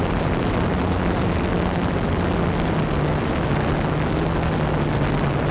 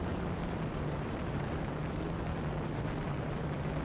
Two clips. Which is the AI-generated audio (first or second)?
second